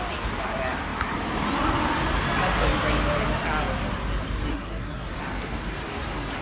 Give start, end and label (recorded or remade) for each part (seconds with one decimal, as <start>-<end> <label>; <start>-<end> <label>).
0.0-4.5 recorded; 4.5-5.1 remade; 5.1-6.4 recorded